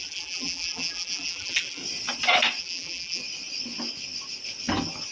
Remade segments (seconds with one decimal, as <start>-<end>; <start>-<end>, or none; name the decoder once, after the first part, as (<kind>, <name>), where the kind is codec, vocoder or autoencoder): 0.0-1.8 (vocoder, BigVGAN v2); 2.6-3.2